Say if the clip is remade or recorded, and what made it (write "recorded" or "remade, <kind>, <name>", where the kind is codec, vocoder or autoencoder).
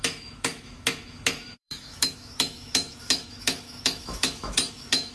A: remade, autoencoder, DAC-VAE